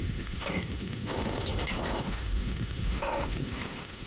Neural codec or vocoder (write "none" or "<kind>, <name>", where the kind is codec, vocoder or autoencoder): autoencoder, DAC-VAE